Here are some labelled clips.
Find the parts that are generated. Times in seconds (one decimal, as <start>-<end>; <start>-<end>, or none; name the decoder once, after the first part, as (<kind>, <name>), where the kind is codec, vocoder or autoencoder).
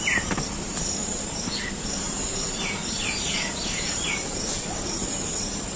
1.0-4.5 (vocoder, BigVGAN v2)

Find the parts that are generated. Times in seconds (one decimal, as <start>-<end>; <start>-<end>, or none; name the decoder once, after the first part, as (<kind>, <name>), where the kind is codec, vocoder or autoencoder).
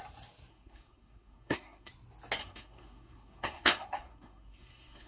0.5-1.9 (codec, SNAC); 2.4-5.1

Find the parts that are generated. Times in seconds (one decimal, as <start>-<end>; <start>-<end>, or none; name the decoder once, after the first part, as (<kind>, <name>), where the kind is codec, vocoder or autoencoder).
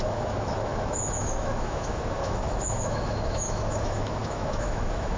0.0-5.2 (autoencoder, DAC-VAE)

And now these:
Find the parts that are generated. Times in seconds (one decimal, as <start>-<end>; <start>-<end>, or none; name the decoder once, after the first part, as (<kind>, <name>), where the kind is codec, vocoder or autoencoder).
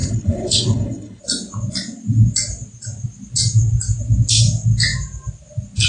0.0-1.2 (codec, HILCodec)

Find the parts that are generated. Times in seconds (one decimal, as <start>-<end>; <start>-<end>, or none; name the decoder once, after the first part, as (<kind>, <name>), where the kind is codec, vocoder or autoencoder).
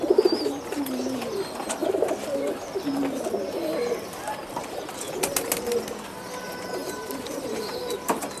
1.8-2.7 (vocoder, BigVGAN v2); 3.6-4.9; 6.8-8.4